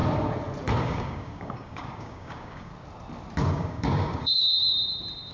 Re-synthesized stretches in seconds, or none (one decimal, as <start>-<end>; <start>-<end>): 0.8-2.7; 3.5-4.5